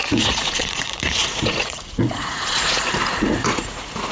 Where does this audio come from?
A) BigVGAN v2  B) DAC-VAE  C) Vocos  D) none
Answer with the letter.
C